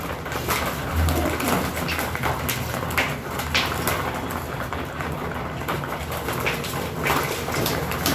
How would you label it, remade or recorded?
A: recorded